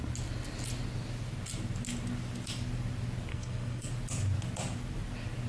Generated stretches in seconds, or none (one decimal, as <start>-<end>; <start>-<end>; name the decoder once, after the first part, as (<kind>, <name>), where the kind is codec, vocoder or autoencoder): 3.3-3.9 (codec, SNAC)